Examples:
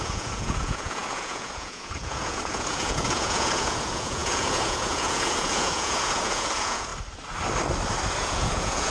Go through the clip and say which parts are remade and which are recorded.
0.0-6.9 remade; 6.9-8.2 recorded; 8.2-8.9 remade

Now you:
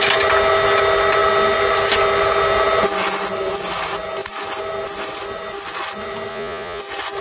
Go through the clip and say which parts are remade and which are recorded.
0.0-6.3 recorded; 6.3-6.8 remade; 6.8-7.2 recorded

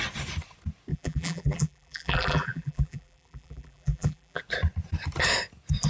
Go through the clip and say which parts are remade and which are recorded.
0.0-0.9 recorded; 0.9-4.4 remade; 4.4-5.9 recorded